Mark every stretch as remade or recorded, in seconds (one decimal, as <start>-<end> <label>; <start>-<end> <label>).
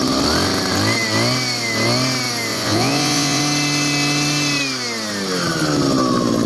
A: 0.0-2.5 recorded; 2.5-3.4 remade; 3.4-6.5 recorded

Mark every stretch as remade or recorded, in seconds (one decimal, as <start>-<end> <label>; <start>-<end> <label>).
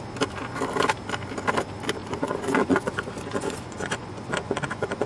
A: 0.0-2.0 recorded; 2.0-5.1 remade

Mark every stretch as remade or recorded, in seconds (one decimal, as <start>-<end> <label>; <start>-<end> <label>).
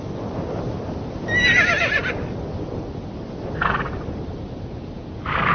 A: 0.0-5.5 recorded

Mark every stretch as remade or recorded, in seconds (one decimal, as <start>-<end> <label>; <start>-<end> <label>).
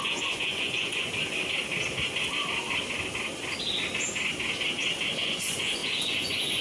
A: 0.0-1.1 remade; 1.1-5.1 recorded; 5.1-6.6 remade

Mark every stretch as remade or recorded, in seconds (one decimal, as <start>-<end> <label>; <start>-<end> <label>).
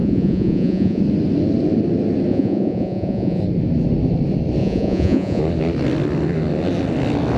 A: 0.0-1.0 remade; 1.0-2.3 recorded; 2.3-3.4 remade; 3.4-4.6 recorded; 4.6-5.4 remade; 5.4-7.4 recorded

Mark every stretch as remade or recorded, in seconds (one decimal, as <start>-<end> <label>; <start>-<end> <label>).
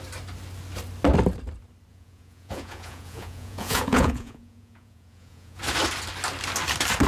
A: 0.0-1.9 recorded; 1.9-5.6 remade; 5.6-7.1 recorded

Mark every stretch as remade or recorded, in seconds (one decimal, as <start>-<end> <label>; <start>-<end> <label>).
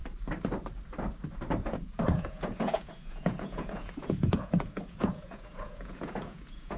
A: 0.0-1.6 recorded; 1.6-6.8 remade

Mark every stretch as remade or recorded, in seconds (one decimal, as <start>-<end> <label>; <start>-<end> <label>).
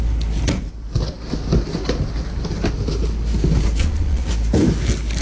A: 0.0-3.8 recorded; 3.8-4.3 remade; 4.3-5.2 recorded